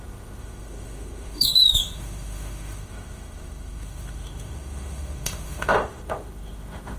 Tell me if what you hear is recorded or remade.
remade